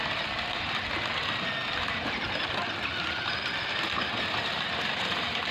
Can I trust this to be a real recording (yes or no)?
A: yes